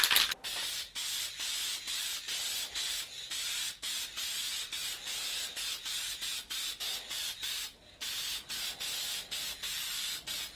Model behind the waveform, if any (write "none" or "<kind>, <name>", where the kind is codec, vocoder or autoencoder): none